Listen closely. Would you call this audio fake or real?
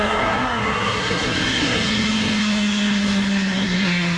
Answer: fake